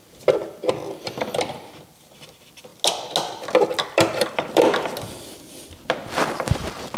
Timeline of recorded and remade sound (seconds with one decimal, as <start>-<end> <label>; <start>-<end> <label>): 0.0-2.7 remade; 2.7-3.5 recorded; 3.5-7.0 remade